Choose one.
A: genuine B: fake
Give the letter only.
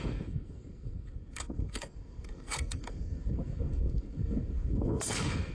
B